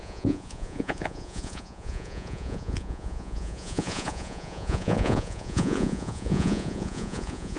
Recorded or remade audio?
remade